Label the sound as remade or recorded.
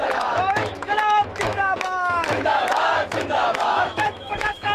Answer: remade